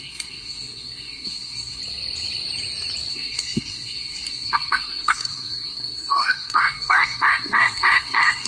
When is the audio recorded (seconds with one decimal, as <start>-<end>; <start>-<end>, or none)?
1.8-3.1